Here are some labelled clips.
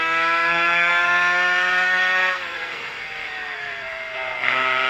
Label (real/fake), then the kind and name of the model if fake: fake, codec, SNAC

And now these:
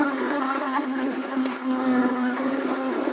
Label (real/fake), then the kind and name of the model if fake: fake, codec, SNAC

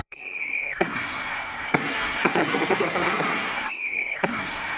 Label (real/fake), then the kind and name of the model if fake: fake, codec, SNAC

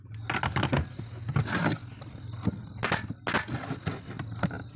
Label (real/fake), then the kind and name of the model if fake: real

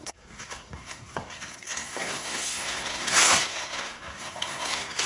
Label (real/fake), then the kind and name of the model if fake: fake, codec, SNAC